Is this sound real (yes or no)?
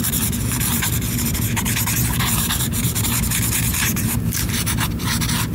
no